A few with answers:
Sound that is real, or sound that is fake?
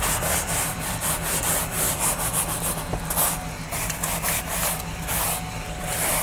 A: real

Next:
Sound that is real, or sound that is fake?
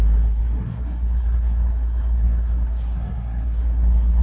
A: fake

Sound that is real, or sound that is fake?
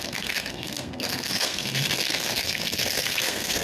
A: fake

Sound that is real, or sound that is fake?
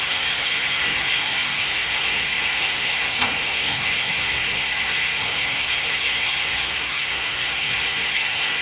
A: fake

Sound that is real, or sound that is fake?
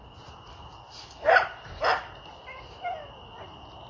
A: real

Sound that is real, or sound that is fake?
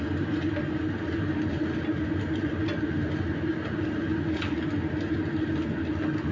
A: real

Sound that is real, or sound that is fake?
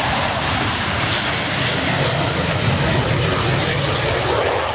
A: real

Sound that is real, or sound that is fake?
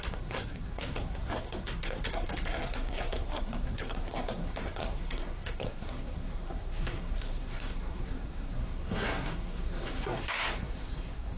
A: fake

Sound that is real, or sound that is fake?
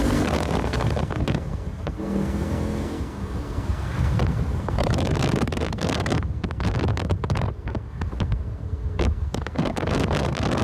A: fake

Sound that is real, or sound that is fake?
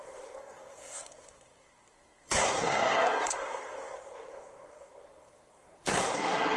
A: fake